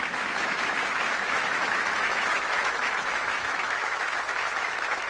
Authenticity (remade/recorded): remade